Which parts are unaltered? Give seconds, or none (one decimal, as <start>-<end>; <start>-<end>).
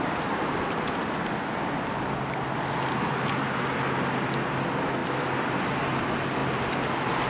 0.0-7.3